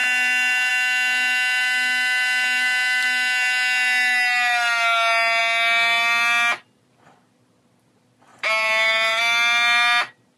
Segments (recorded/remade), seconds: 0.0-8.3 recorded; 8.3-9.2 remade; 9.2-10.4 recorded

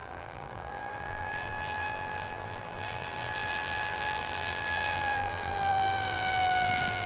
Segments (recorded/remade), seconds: 0.0-7.1 remade